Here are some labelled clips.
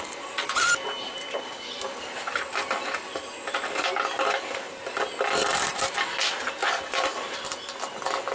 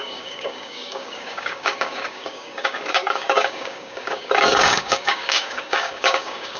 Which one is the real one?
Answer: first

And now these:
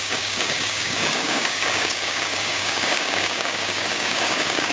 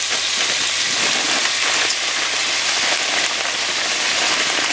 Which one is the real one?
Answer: second